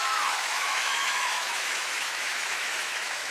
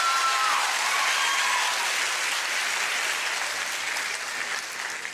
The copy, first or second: first